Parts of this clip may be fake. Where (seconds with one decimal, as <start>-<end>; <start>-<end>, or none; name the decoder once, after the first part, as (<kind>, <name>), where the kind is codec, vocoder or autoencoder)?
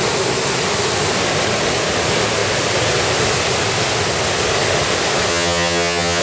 5.3-6.2 (vocoder, HiFi-GAN)